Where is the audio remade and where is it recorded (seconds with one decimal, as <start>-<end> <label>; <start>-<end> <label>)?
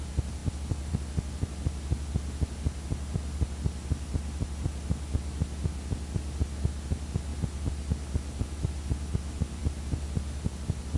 0.0-11.0 recorded